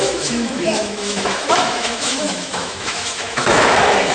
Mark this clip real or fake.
fake